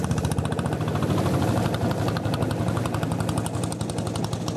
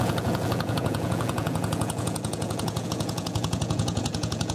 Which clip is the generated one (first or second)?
second